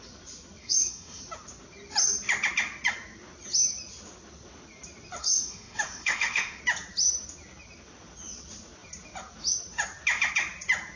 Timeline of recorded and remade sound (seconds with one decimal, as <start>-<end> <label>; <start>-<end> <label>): 0.0-0.6 recorded; 0.6-1.2 remade; 1.2-5.2 recorded; 5.2-6.6 remade; 6.6-11.0 recorded